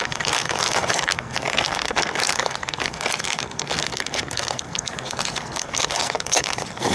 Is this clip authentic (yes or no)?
no